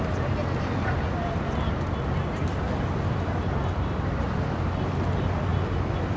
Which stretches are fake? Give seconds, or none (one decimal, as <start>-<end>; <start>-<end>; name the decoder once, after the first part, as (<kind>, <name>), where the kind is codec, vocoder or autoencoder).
none